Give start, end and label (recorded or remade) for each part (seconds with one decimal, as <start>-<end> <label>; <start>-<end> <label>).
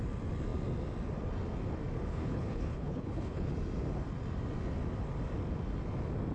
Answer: 0.0-2.1 recorded; 2.1-3.5 remade; 3.5-6.3 recorded